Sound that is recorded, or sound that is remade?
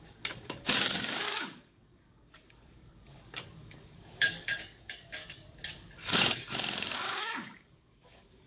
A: remade